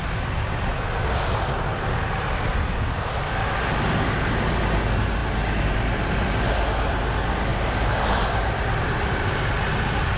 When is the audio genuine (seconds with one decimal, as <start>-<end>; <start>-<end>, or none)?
0.0-7.5; 9.1-10.2